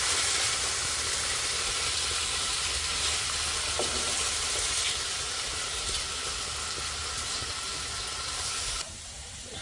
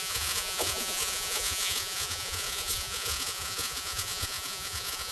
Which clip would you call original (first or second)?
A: first